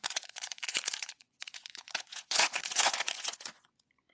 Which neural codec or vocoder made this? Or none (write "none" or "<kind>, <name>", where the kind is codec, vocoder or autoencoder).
vocoder, Vocos